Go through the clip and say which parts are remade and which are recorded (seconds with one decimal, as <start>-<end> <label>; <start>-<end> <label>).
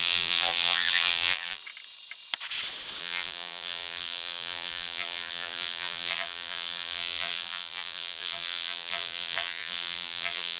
0.0-1.6 remade; 1.6-3.0 recorded; 3.0-10.6 remade